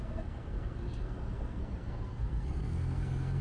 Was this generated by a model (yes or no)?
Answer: yes